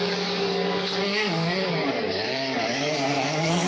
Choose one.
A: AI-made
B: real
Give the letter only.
A